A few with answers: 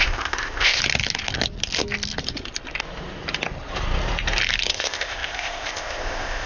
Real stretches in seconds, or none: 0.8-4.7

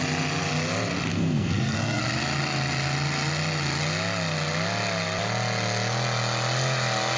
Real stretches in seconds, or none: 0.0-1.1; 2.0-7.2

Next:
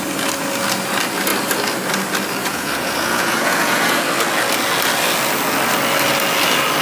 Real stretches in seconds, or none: 0.0-2.4; 4.0-6.8

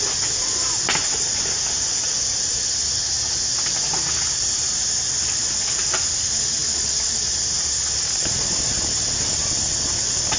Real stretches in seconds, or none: 0.0-10.4

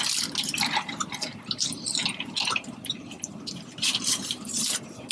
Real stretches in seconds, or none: 0.0-5.1

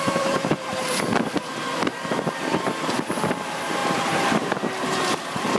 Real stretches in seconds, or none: none

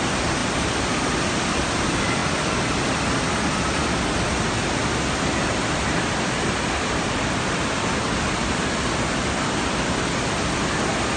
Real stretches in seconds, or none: 0.0-11.2